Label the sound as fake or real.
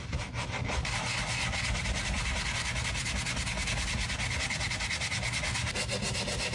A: real